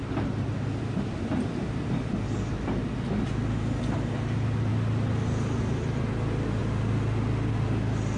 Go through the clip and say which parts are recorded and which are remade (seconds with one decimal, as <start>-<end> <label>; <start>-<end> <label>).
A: 0.0-2.0 remade; 2.0-8.2 recorded